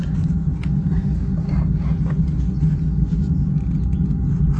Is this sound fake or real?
real